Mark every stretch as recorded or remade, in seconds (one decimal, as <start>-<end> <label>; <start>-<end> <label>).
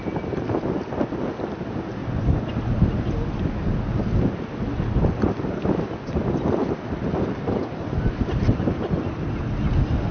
0.0-7.6 recorded; 7.6-8.6 remade; 8.6-10.1 recorded